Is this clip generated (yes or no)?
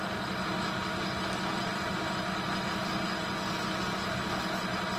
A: no